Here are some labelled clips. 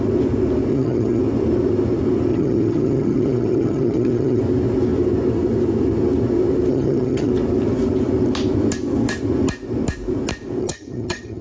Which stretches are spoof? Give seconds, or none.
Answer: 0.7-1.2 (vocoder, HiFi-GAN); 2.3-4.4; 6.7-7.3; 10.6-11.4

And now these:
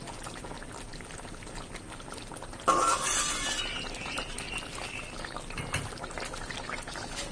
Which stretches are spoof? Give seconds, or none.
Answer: none

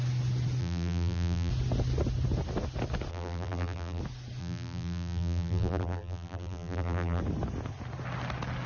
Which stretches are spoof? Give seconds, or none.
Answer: 0.6-1.5 (vocoder, BigVGAN v2); 3.1-4.0; 4.4-7.2

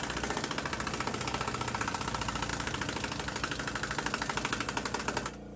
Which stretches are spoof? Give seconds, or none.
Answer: none